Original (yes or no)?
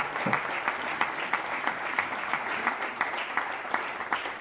no